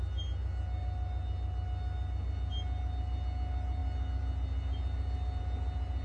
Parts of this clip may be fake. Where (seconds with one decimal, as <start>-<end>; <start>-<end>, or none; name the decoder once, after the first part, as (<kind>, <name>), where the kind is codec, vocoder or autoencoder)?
none